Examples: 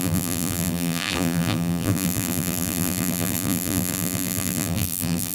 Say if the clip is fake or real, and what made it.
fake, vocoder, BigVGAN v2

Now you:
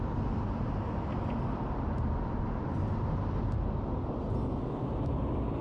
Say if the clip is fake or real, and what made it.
real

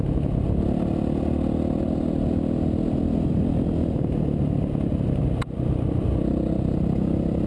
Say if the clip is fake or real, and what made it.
real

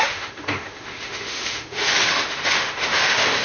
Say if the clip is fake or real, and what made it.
fake, autoencoder, DAC-VAE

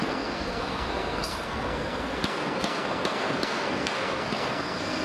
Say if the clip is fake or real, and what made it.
fake, codec, SNAC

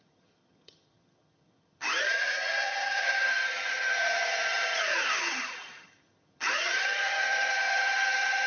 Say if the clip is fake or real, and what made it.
fake, vocoder, HiFi-GAN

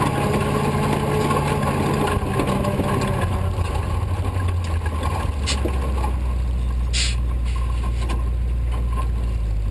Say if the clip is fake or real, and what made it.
real